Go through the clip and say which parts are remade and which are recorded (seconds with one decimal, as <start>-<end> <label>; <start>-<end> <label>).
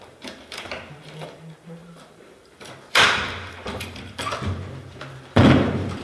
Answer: 0.0-6.0 remade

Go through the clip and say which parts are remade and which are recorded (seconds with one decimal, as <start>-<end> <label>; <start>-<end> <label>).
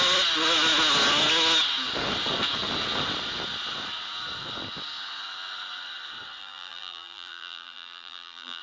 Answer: 0.0-6.4 recorded; 6.4-8.6 remade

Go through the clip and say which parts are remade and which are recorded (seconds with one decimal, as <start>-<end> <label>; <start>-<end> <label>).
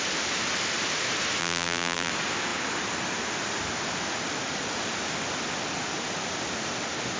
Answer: 0.0-1.4 recorded; 1.4-2.1 remade; 2.1-7.2 recorded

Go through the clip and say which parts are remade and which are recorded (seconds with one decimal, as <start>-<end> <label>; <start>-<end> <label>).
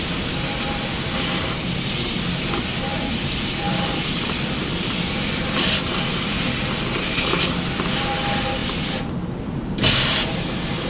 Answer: 0.0-2.9 recorded; 2.9-5.8 remade; 5.8-10.9 recorded